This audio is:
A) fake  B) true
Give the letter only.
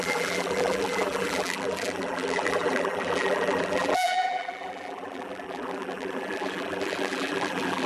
A